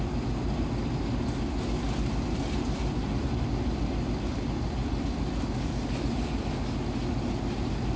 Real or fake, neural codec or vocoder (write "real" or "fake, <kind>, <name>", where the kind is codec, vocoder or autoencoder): real